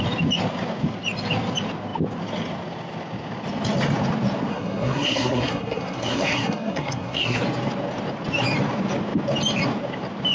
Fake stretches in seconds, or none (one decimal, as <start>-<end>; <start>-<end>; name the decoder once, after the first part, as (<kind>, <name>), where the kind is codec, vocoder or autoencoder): 4.5-7.4 (codec, SNAC)